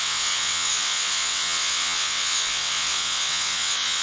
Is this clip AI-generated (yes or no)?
yes